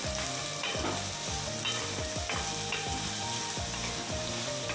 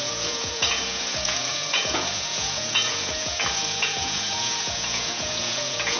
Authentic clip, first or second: first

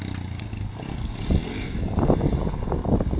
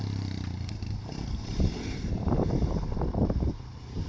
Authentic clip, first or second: first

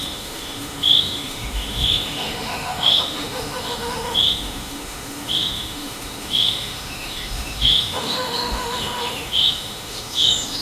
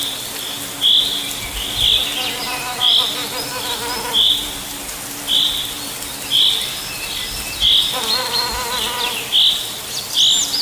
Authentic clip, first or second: second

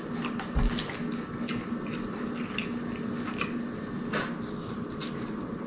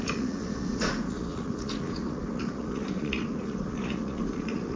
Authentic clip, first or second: first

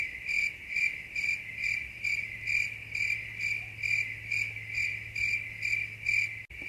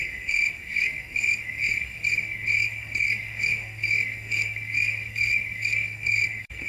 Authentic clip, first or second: first